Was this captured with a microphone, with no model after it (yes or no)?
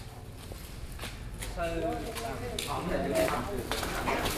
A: yes